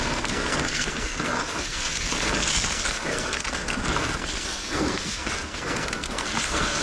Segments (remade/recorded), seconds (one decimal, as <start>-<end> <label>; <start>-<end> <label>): 0.0-6.8 remade